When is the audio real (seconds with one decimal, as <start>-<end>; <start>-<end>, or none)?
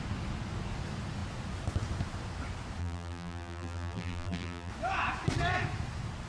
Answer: 0.0-2.8; 4.7-6.3